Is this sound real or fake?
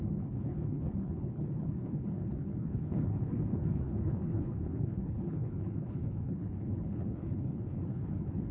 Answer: fake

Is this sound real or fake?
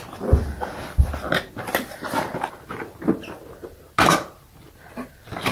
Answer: real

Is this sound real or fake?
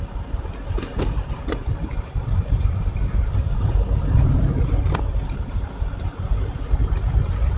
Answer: real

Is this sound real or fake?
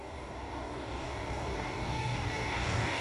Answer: fake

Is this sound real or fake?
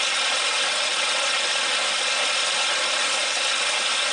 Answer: real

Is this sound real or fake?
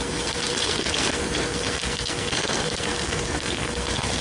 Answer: fake